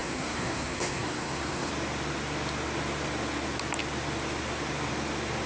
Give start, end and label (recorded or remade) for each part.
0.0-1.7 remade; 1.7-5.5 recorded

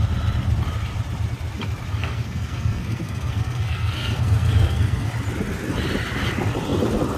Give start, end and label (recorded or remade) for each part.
0.0-1.9 recorded; 1.9-5.1 remade; 5.1-7.2 recorded